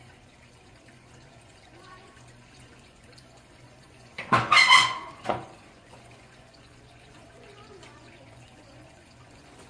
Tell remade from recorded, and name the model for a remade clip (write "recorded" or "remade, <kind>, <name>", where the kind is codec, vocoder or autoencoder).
remade, vocoder, Vocos